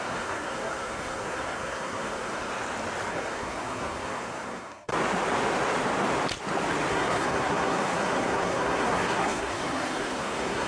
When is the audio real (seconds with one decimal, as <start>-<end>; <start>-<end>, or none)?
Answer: 2.5-3.1; 4.9-6.9